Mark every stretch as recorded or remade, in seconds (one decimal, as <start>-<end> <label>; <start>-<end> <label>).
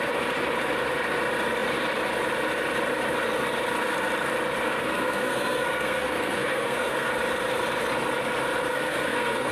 0.0-4.9 recorded; 4.9-7.1 remade; 7.1-8.7 recorded; 8.7-9.5 remade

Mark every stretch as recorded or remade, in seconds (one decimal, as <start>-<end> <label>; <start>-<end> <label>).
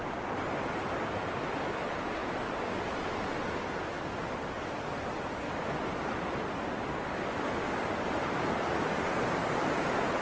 0.0-10.2 recorded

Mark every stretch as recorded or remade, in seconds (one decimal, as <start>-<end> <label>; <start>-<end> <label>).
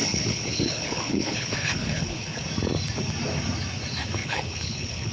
0.0-2.4 remade; 2.4-4.2 recorded; 4.2-5.1 remade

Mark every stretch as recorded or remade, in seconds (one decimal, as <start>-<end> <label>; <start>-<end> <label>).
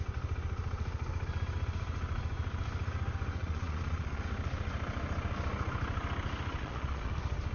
0.0-3.4 recorded; 3.4-4.2 remade; 4.2-6.6 recorded; 6.6-7.1 remade; 7.1-7.5 recorded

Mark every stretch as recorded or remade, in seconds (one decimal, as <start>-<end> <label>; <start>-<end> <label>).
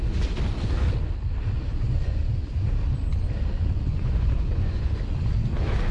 0.0-1.7 recorded; 1.7-2.2 remade; 2.2-3.9 recorded; 3.9-4.9 remade; 4.9-5.9 recorded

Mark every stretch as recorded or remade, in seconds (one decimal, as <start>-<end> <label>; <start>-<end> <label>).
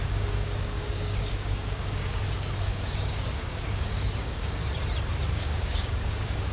0.0-4.6 remade; 4.6-5.3 recorded; 5.3-6.5 remade